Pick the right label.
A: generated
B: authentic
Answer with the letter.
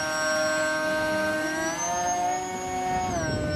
B